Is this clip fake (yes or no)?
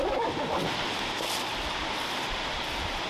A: no